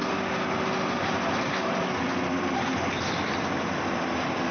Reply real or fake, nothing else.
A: real